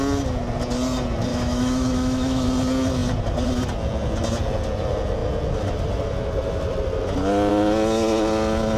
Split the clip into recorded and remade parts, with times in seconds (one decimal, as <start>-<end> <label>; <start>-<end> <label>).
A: 0.0-1.3 recorded; 1.3-2.5 remade; 2.5-8.8 recorded